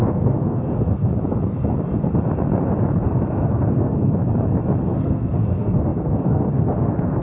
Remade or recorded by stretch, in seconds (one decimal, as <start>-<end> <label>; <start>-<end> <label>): 0.0-1.0 remade; 1.0-3.0 recorded; 3.0-4.2 remade; 4.2-4.8 recorded; 4.8-7.2 remade